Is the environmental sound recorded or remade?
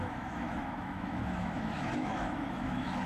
remade